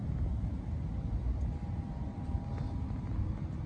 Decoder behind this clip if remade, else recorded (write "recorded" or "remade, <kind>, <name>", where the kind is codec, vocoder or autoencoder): recorded